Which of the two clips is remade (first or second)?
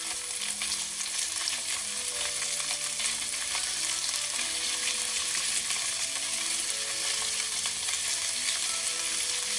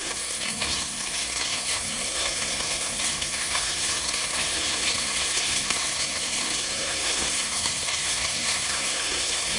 second